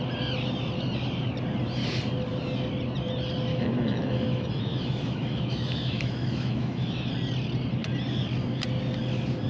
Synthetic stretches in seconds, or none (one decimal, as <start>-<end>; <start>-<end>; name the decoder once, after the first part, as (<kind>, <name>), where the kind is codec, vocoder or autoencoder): 3.5-7.1 (autoencoder, DAC-VAE)